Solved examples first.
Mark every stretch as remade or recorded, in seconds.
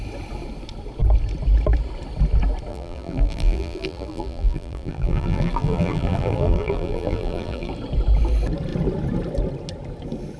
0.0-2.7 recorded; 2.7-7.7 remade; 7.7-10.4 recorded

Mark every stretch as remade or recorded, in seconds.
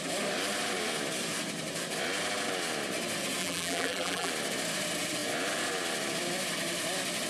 0.0-3.4 recorded; 3.4-4.3 remade; 4.3-7.3 recorded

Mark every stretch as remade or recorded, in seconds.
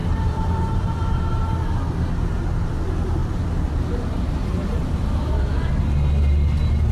0.0-1.2 remade; 1.2-3.2 recorded; 3.2-5.7 remade; 5.7-6.9 recorded